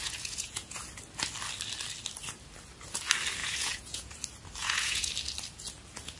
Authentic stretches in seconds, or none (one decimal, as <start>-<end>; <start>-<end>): 0.8-3.4; 4.1-4.6; 5.1-6.2